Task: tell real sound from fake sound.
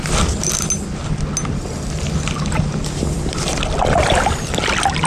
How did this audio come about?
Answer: real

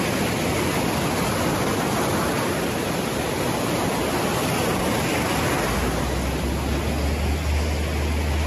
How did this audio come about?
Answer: real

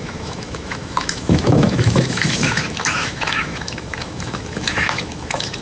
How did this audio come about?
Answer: fake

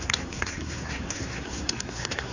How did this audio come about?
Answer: fake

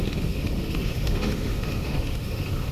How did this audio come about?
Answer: fake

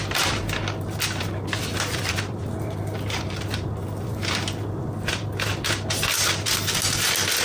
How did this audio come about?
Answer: real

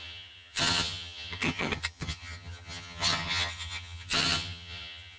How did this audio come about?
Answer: fake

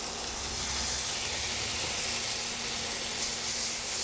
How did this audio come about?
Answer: real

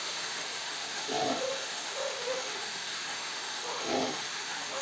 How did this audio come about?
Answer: fake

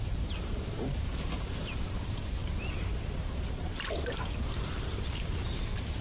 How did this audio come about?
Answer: fake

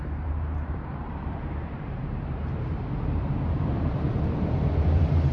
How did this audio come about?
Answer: fake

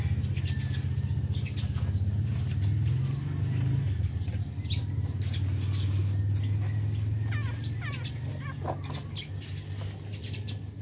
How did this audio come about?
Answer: real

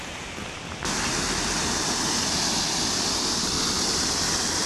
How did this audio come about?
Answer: real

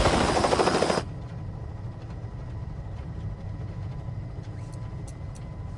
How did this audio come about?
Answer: real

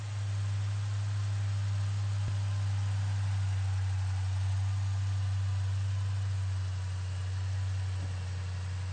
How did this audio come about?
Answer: real